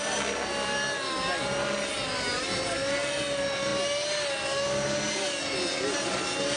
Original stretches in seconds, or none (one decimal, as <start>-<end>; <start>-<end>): 0.0-6.6